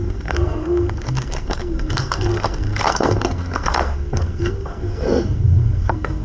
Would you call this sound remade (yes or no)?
yes